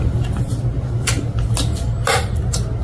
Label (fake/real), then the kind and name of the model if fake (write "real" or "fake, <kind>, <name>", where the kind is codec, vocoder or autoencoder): real